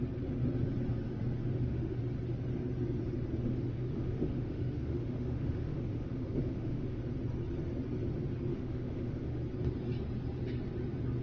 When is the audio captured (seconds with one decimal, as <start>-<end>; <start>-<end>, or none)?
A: 0.0-1.5; 2.0-3.5; 7.0-8.5; 9.4-11.2